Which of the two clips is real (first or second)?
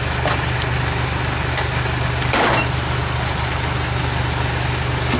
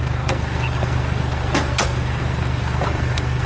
first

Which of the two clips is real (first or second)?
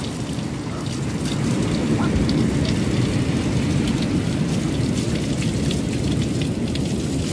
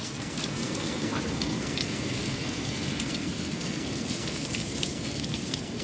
first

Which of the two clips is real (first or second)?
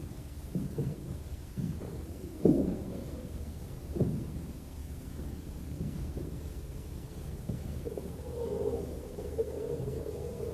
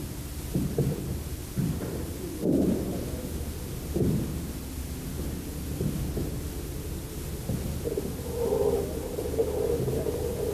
second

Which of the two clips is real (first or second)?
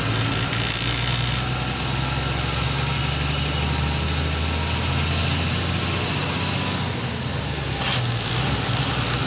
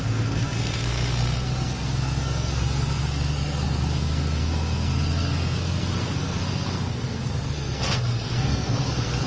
first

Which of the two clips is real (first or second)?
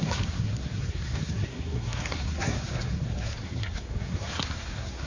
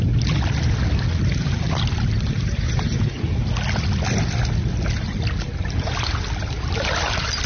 second